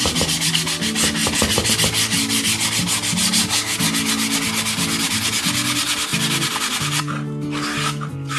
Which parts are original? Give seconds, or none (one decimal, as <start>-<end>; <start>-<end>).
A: 0.0-8.4